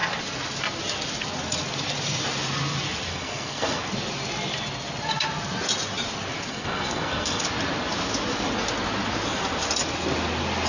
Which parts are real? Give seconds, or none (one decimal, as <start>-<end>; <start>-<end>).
0.0-3.1; 3.8-6.5; 7.4-10.7